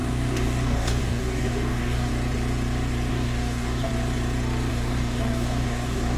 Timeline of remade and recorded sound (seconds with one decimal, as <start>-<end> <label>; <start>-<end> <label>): 0.0-2.1 remade; 2.1-3.1 recorded; 3.1-3.9 remade; 3.9-4.7 recorded; 4.7-6.2 remade